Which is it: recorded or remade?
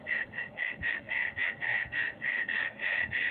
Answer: remade